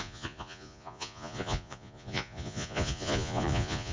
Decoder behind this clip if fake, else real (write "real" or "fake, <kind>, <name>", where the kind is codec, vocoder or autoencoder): fake, vocoder, Vocos